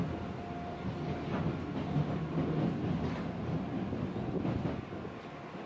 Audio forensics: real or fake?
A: real